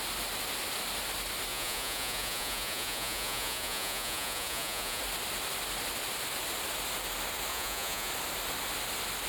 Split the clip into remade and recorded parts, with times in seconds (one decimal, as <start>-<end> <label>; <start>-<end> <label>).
0.0-1.5 recorded; 1.5-5.0 remade; 5.0-7.5 recorded; 7.5-8.1 remade; 8.1-9.3 recorded